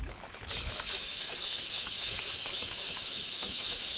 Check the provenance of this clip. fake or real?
fake